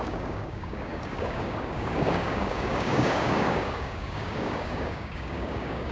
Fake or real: fake